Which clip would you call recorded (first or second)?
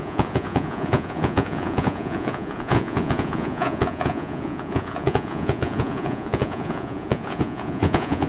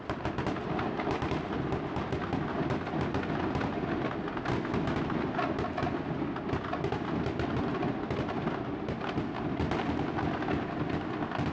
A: second